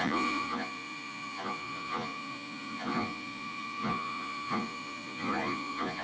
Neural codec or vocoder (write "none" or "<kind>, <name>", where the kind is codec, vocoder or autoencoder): vocoder, Vocos